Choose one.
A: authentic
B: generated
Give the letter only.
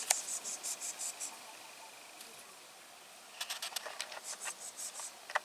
A